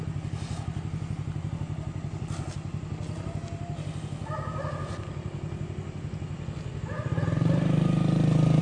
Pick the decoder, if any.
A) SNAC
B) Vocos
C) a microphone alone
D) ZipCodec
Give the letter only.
C